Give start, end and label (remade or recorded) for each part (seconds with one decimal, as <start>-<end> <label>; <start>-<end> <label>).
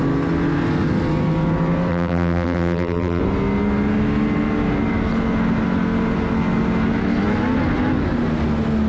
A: 0.0-1.9 recorded; 1.9-3.2 remade; 3.2-8.9 recorded